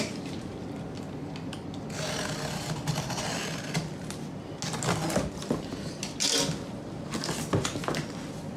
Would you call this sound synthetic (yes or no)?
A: no